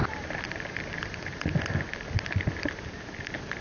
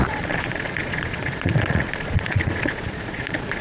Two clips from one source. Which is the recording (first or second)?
first